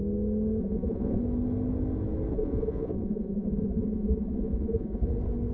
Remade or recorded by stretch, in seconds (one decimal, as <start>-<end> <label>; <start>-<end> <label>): 0.0-0.6 recorded; 0.6-1.2 remade; 1.2-2.3 recorded; 2.3-5.1 remade; 5.1-5.5 recorded